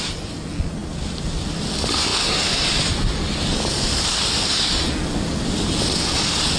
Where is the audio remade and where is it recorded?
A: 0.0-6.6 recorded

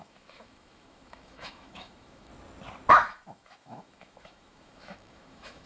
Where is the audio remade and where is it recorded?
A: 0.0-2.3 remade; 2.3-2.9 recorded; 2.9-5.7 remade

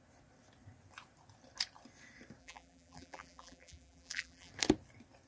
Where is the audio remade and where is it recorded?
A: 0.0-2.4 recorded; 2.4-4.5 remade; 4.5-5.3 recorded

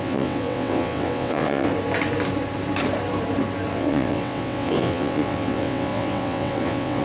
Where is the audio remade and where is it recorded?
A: 0.0-1.7 remade; 1.7-3.7 recorded; 3.7-7.0 remade

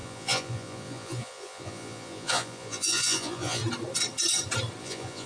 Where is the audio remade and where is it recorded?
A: 0.0-3.6 remade; 3.6-4.8 recorded; 4.8-5.3 remade